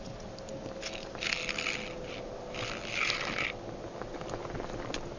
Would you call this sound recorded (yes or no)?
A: yes